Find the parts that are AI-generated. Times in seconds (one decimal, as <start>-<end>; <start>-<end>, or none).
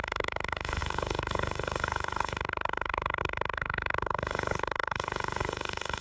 0.0-6.0